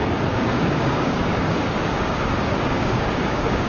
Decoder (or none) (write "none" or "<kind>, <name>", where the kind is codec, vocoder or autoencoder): codec, DAC